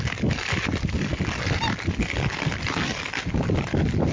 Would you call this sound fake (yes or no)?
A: no